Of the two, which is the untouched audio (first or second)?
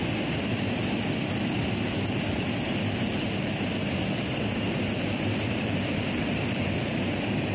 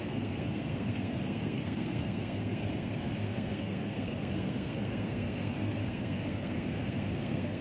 first